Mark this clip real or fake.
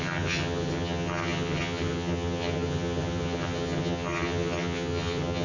fake